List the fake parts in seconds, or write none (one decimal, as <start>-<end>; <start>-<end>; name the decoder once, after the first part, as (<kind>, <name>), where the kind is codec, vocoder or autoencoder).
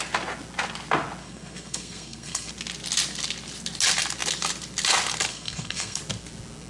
1.2-2.5 (codec, SNAC); 5.3-6.0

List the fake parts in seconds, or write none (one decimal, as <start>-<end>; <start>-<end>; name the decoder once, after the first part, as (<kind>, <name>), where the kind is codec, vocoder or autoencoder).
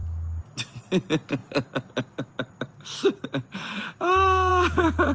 none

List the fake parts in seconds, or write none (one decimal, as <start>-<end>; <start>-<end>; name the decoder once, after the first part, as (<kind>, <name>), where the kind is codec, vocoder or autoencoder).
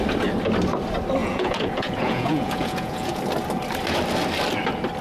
1.2-3.2 (vocoder, Vocos)